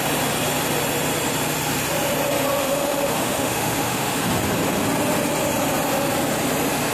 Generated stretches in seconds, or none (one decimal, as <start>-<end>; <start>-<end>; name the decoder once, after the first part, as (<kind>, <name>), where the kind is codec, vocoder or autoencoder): 2.6-4.3 (autoencoder, DAC-VAE)